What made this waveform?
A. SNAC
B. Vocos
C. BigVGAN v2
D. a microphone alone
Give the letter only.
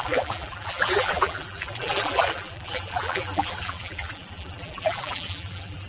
C